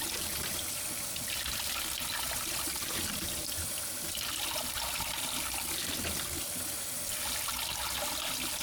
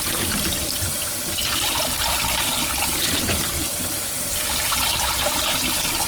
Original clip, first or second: first